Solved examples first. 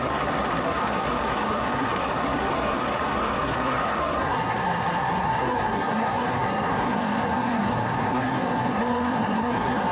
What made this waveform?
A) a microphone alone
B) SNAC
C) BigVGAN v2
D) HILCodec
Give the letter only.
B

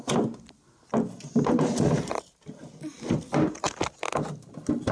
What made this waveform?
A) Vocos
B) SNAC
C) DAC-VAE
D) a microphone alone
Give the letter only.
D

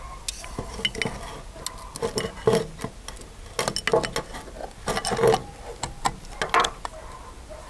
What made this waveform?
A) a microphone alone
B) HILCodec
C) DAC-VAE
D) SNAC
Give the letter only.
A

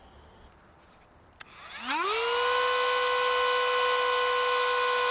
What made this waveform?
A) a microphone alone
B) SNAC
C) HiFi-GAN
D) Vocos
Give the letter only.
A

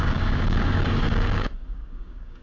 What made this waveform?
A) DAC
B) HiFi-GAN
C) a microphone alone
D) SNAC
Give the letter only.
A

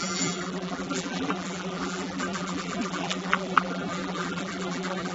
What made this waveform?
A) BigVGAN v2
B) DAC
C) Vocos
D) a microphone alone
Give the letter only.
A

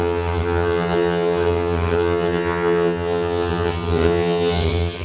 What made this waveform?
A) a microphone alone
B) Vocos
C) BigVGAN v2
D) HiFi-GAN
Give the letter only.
D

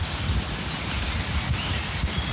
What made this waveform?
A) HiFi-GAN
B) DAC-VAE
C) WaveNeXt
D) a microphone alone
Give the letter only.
D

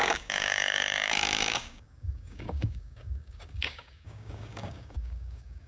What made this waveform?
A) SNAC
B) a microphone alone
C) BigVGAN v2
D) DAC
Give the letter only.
D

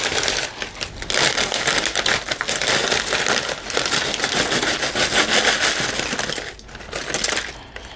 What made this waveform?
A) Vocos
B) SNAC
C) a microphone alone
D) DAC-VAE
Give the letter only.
C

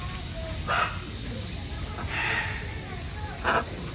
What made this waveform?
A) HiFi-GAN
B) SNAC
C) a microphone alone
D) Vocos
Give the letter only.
C